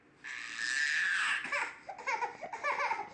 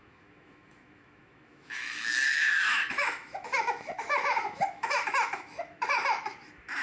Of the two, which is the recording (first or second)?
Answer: first